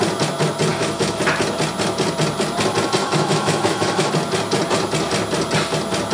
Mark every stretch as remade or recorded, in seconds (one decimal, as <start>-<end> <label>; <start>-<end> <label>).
0.0-0.7 recorded; 0.7-1.2 remade; 1.2-3.0 recorded; 3.0-4.1 remade; 4.1-6.1 recorded